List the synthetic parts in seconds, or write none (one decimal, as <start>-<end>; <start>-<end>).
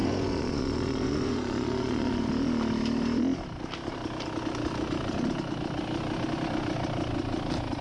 0.0-2.3